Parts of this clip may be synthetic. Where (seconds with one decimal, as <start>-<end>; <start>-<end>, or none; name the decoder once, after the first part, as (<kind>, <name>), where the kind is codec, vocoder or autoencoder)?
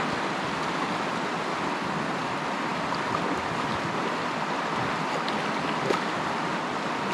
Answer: none